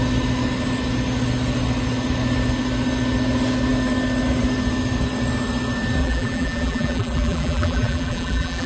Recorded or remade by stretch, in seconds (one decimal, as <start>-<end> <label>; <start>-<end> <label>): 0.0-6.0 recorded; 6.0-8.7 remade